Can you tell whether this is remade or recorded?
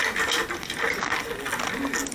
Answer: recorded